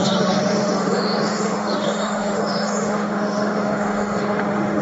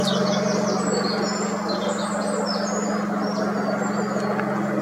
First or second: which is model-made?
first